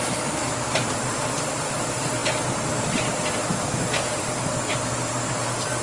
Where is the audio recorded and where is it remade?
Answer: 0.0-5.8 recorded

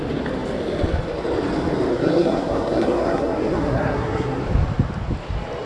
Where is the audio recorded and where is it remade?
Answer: 0.0-1.9 recorded; 1.9-4.4 remade; 4.4-5.7 recorded